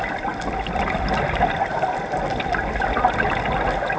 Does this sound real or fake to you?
real